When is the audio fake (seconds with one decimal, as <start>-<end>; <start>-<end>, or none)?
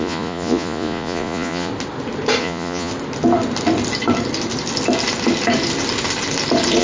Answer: 0.0-1.7; 2.4-2.9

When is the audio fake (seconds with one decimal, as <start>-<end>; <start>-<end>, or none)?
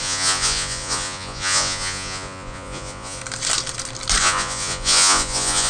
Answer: 0.0-3.2; 4.2-5.7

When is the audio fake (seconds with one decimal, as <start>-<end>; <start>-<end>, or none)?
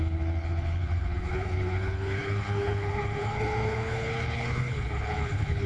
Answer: 0.0-5.7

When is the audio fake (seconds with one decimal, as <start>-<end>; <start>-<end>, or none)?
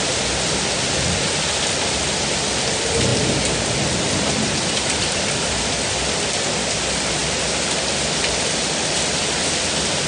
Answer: none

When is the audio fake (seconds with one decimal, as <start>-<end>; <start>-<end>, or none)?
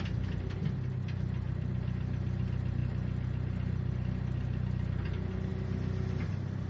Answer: none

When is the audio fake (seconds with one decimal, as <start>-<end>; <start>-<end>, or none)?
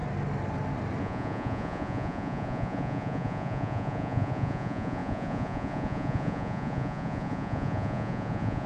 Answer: 1.0-8.7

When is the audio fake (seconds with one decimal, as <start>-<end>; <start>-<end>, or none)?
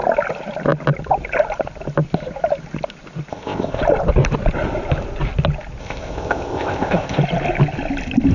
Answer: 3.3-3.8; 5.8-7.2